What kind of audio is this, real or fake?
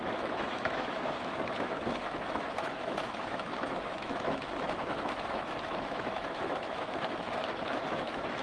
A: fake